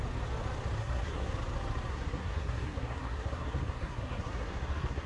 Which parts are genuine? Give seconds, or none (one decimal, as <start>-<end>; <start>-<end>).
0.0-0.8; 1.3-1.9